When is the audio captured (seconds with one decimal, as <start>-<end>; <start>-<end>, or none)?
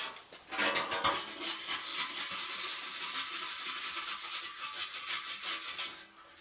0.0-6.4